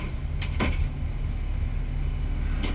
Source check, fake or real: real